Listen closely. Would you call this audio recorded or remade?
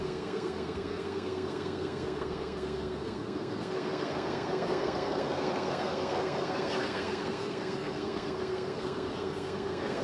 remade